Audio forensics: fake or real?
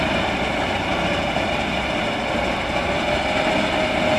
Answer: real